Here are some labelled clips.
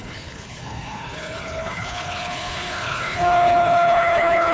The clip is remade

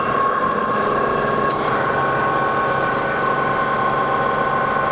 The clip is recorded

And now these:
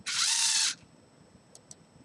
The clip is recorded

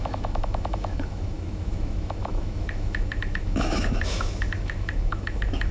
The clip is remade